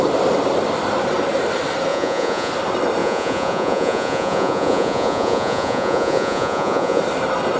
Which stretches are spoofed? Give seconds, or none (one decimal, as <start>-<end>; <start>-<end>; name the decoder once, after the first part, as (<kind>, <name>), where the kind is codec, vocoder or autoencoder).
1.9-2.5 (vocoder, Vocos); 3.0-7.0